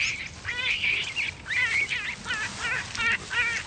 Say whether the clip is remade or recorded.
recorded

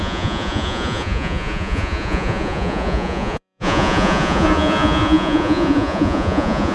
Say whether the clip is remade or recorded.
remade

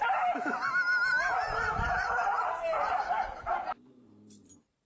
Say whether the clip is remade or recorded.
remade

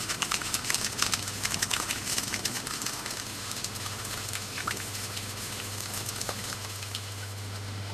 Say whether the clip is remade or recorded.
remade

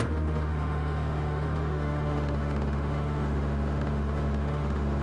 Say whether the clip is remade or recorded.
remade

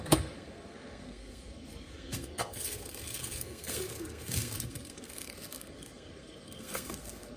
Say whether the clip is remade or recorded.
remade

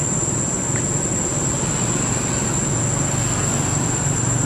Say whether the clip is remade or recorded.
recorded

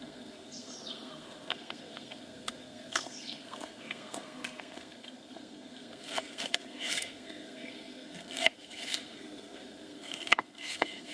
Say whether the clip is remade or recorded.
remade